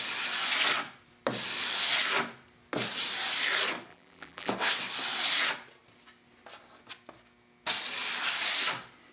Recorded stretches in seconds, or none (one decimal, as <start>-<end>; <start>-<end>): 0.0-3.9; 4.5-9.1